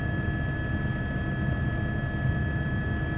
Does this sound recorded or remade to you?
recorded